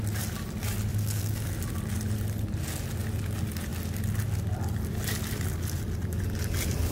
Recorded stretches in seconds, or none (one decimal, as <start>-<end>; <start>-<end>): 0.0-0.9; 1.5-6.9